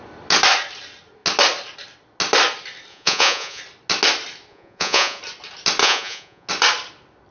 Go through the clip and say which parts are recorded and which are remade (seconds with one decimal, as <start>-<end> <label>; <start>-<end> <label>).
0.0-2.9 recorded; 2.9-3.6 remade; 3.6-4.5 recorded; 4.5-5.2 remade; 5.2-5.8 recorded; 5.8-6.5 remade; 6.5-7.3 recorded